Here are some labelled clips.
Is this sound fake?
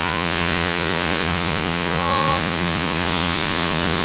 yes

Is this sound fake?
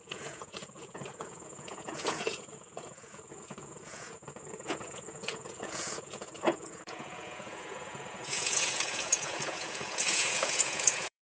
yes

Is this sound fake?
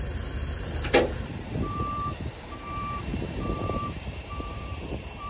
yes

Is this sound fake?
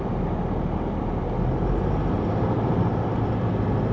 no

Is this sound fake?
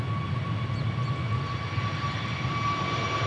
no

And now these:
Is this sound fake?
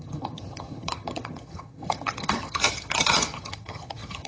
yes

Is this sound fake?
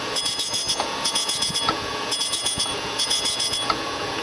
yes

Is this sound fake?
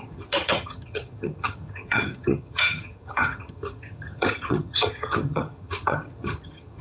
yes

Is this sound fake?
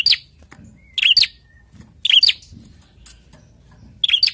no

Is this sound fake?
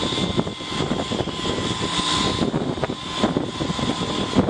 no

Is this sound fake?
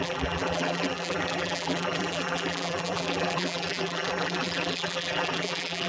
yes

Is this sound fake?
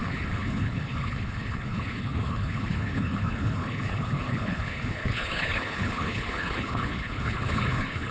yes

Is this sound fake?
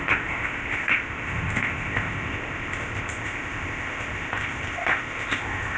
yes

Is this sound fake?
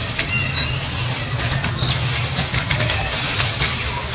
no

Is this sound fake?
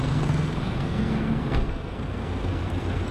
yes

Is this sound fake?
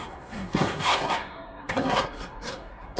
yes